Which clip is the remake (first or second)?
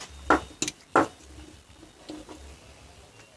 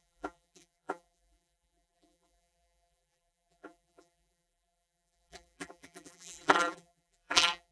second